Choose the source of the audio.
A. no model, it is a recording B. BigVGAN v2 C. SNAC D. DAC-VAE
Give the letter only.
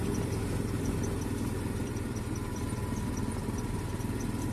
A